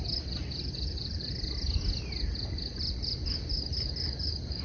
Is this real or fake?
real